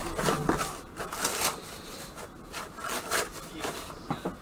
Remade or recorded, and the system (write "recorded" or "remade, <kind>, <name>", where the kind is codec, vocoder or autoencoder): recorded